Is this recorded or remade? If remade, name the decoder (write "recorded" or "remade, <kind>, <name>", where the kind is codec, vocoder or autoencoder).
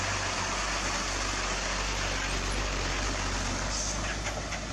recorded